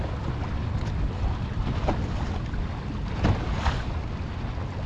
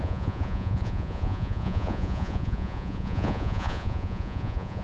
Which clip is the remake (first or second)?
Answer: second